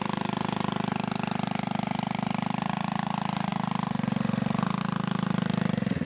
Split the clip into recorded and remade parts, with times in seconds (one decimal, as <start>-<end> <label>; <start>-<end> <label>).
0.0-6.1 recorded